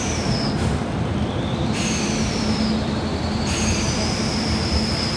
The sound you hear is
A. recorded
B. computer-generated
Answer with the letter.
B